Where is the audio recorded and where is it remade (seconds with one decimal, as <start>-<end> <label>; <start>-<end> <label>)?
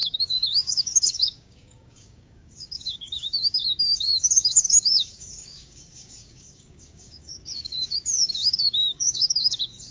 0.0-9.9 remade